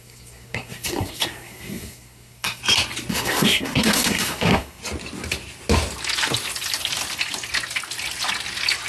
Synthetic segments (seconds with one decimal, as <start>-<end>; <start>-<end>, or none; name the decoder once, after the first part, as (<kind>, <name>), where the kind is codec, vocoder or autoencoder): 0.0-2.6 (codec, SNAC); 3.1-4.8